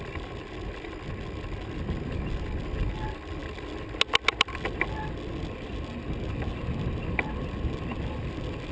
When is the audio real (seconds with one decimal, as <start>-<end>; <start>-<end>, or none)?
0.0-8.7